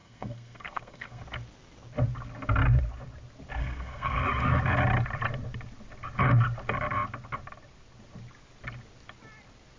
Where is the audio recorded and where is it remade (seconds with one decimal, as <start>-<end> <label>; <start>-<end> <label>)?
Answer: 0.0-1.2 remade; 1.2-3.6 recorded; 3.6-4.2 remade; 4.2-9.8 recorded